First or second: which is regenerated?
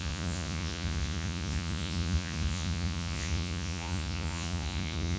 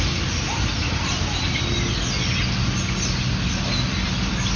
first